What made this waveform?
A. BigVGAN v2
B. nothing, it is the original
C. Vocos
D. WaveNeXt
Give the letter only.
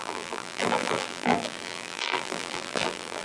A